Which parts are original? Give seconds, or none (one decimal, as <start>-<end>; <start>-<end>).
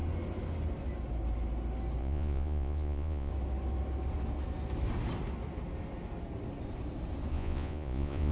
0.0-2.0; 3.3-7.3